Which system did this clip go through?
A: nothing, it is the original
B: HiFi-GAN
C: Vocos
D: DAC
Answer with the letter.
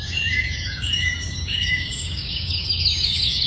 D